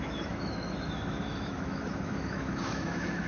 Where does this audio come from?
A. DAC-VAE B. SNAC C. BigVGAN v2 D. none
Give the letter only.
A